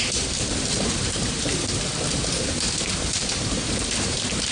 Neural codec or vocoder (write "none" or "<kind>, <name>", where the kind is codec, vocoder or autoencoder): vocoder, BigVGAN v2